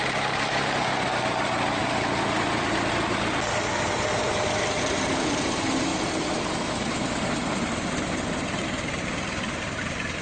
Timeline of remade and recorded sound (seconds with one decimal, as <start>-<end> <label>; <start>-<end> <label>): 0.0-1.8 remade; 1.8-3.7 recorded; 3.7-10.2 remade